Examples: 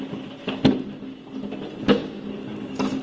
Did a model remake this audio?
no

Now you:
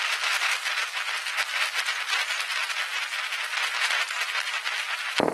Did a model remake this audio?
no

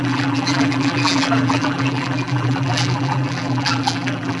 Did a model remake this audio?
yes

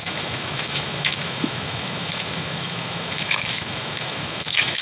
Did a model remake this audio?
yes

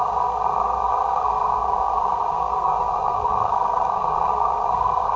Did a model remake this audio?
yes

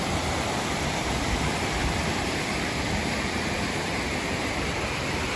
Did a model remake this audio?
yes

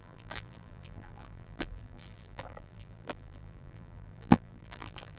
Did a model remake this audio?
yes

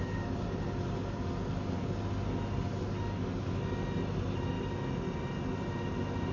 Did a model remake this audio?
no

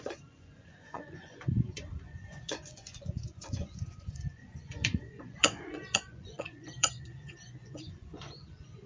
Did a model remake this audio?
yes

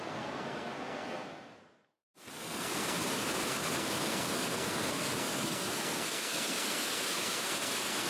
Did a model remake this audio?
yes